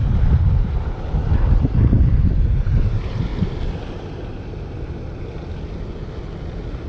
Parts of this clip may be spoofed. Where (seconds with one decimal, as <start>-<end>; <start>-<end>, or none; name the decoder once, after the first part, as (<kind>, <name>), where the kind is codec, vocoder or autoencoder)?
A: 0.0-3.3 (vocoder, BigVGAN v2)